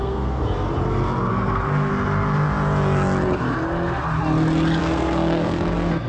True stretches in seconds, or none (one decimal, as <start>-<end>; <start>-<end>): 0.4-1.3; 1.9-4.8